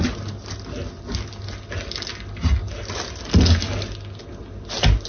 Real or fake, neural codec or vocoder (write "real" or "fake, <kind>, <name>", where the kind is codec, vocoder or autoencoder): real